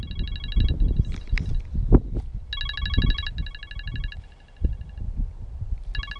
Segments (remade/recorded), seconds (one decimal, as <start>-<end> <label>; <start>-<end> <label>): 0.0-6.2 recorded